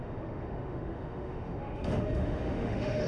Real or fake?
fake